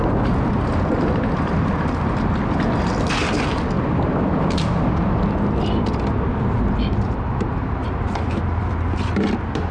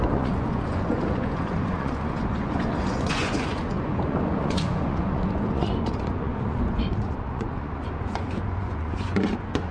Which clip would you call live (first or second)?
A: first